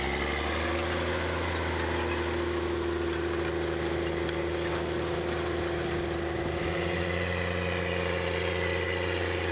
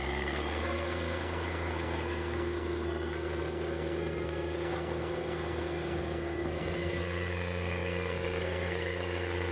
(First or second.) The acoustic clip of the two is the first